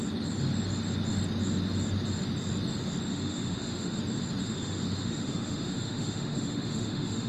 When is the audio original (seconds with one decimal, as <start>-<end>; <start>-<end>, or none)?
0.0-3.1; 4.0-4.4